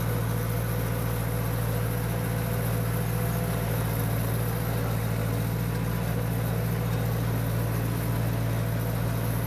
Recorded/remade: recorded